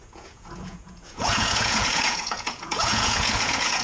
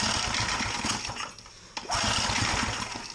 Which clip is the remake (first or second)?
first